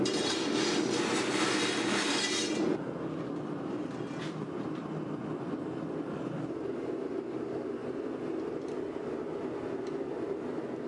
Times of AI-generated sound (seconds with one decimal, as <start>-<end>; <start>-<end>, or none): none

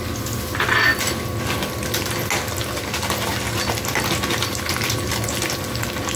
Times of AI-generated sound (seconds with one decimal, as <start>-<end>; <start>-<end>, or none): none

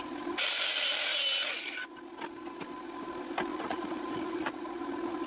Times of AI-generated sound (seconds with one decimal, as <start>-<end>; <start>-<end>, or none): 3.5-4.8